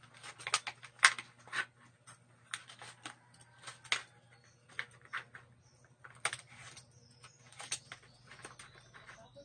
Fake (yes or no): no